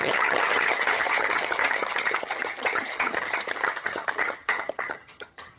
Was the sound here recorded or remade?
remade